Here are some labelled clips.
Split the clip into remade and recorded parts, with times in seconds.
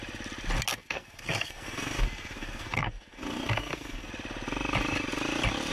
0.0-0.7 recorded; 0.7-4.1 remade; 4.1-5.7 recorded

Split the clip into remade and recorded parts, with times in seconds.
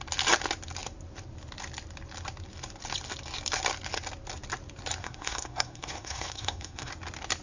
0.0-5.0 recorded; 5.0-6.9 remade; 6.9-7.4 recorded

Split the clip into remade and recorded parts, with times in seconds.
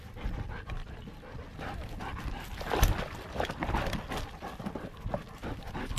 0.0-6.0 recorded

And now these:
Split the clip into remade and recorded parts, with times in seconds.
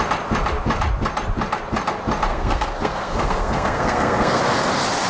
0.0-2.3 recorded; 2.3-4.4 remade; 4.4-5.1 recorded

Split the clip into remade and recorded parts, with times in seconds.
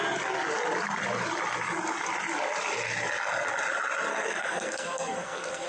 0.0-4.1 recorded; 4.1-5.7 remade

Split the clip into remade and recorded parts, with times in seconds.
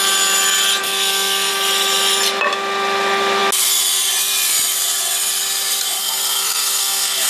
0.0-0.8 recorded; 0.8-1.5 remade; 1.5-6.0 recorded; 6.0-7.3 remade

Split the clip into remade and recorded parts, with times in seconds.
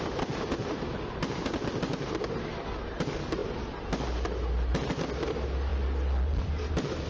0.0-7.1 recorded